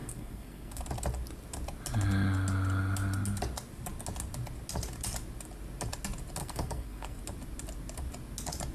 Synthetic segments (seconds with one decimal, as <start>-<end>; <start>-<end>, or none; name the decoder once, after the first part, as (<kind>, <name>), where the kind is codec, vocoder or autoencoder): 0.0-0.8 (codec, SNAC); 6.4-7.2